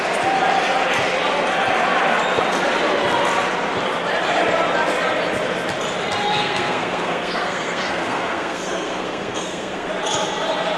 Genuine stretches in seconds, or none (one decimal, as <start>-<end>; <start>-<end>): 0.0-6.2; 9.9-10.8

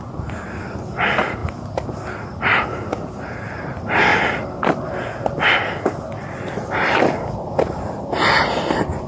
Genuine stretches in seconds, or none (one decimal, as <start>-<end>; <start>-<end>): 0.0-9.1

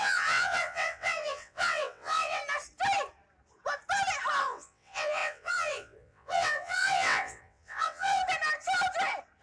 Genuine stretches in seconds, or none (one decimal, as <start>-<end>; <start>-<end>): 2.4-4.4; 8.2-9.4